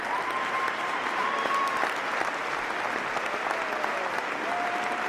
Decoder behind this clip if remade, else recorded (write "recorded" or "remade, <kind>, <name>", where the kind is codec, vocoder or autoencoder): recorded